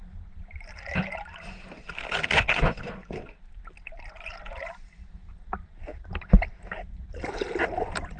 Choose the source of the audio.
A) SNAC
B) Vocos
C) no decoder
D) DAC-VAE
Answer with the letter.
C